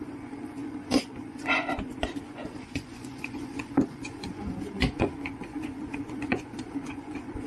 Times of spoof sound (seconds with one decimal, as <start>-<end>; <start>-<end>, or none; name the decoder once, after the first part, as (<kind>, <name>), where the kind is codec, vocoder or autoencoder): 0.0-7.5 (vocoder, Vocos)